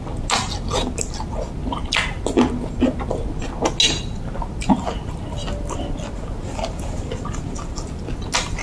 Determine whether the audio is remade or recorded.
recorded